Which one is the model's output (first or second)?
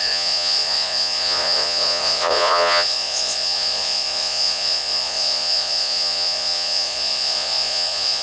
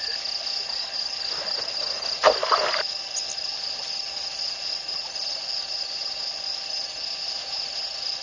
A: first